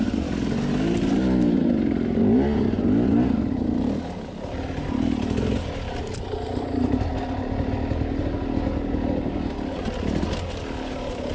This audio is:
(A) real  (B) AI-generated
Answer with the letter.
A